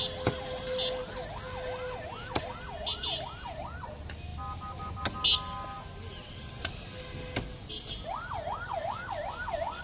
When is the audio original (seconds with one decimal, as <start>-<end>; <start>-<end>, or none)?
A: 0.0-9.8